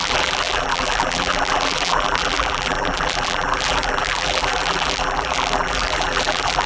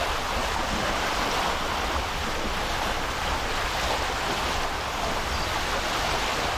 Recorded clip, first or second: second